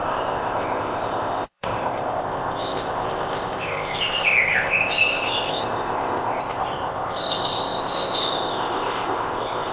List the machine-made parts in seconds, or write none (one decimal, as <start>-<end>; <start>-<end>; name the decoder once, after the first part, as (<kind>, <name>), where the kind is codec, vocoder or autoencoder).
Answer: 0.0-9.7 (codec, ZipCodec)